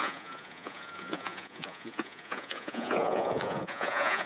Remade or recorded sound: remade